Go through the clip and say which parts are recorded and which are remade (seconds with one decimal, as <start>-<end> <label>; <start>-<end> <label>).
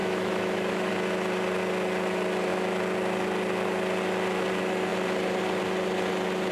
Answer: 0.0-0.9 remade; 0.9-6.5 recorded